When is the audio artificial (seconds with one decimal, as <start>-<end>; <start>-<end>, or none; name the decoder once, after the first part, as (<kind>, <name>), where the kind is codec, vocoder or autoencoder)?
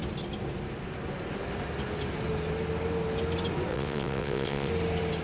3.7-4.7 (vocoder, WaveNeXt)